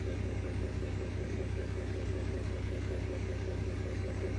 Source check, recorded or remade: remade